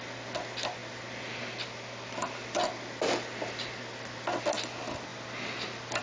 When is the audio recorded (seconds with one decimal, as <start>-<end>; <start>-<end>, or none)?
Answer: 0.0-6.0